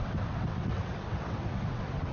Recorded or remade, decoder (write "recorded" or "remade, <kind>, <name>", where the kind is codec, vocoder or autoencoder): remade, vocoder, WaveNeXt